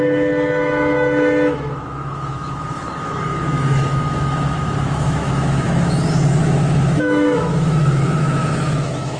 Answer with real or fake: fake